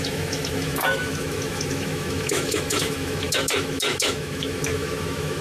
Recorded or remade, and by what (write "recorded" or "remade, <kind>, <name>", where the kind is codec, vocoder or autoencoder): remade, autoencoder, DAC-VAE